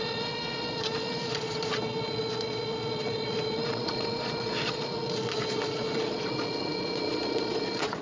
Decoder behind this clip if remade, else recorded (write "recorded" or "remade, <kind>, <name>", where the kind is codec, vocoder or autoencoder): remade, vocoder, Vocos